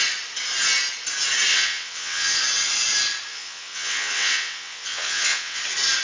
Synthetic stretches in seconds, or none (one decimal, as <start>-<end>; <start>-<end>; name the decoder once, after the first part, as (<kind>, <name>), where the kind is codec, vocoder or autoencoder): 1.5-2.4 (vocoder, WaveNeXt); 3.3-5.6

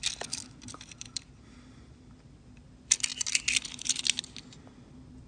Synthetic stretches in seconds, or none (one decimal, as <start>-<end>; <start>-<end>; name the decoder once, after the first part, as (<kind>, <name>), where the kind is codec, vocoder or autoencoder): none

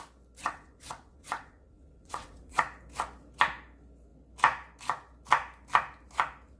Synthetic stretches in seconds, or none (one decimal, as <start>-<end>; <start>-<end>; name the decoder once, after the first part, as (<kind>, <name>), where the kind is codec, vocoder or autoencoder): 0.4-2.6 (vocoder, WaveNeXt)

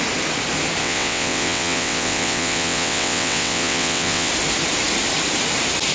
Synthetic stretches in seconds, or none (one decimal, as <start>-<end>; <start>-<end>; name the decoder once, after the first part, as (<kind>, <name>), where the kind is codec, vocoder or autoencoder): 0.8-4.3 (vocoder, WaveNeXt)

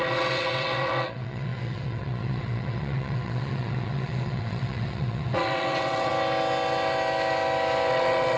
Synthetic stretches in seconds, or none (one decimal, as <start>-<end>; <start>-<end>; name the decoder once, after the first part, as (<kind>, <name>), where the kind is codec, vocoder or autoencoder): 0.0-6.1 (vocoder, WaveNeXt); 7.9-8.4

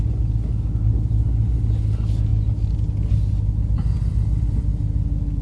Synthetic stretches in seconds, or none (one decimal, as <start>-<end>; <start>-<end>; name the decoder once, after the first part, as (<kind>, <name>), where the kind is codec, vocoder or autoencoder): none